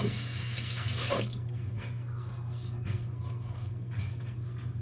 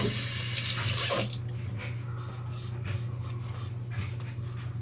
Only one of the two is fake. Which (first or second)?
first